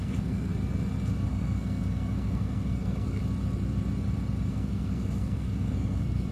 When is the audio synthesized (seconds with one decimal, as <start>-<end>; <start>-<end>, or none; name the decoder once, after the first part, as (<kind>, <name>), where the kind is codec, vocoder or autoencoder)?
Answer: 0.0-0.5 (codec, SNAC); 1.3-3.2; 4.5-6.3